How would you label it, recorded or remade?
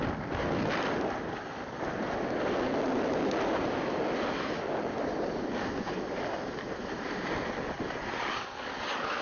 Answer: recorded